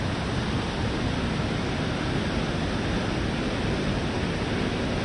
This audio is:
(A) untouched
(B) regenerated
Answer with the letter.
A